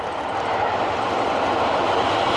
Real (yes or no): yes